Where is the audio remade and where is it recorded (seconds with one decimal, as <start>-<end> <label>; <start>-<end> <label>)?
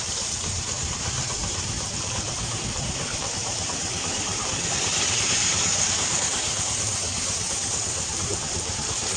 0.0-9.2 remade